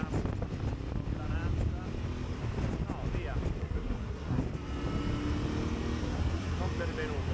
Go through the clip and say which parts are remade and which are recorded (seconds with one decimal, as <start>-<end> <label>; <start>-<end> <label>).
0.0-3.6 recorded; 3.6-4.4 remade; 4.4-6.0 recorded; 6.0-6.6 remade; 6.6-7.3 recorded